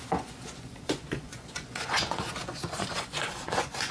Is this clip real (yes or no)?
no